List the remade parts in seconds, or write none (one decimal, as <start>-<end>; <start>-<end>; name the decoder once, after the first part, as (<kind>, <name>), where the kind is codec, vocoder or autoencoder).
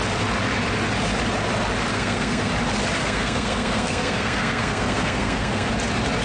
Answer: 1.9-2.5 (codec, SNAC); 3.0-5.7